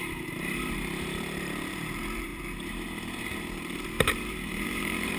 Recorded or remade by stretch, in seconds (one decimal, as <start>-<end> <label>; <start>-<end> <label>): 0.0-2.3 remade; 2.3-3.2 recorded; 3.2-5.2 remade